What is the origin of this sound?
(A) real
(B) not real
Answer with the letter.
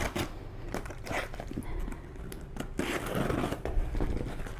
A